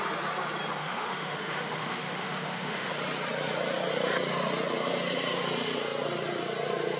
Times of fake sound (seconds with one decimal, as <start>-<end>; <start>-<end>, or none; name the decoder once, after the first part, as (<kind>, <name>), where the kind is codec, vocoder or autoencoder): 0.8-2.9 (autoencoder, DAC-VAE)